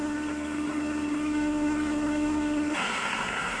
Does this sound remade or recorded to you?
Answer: remade